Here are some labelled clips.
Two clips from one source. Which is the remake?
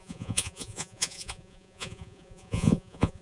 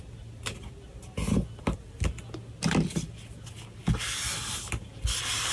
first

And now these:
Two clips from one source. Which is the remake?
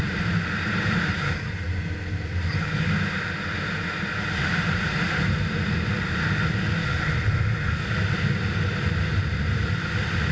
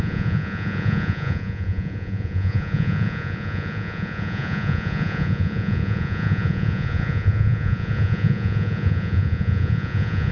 second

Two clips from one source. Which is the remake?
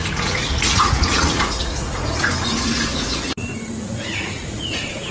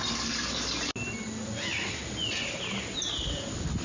first